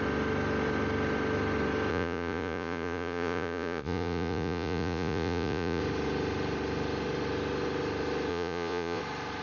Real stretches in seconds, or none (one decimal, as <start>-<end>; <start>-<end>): 0.0-1.9; 5.8-8.3; 9.0-9.4